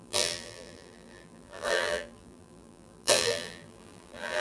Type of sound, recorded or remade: remade